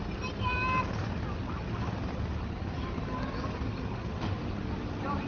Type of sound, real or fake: real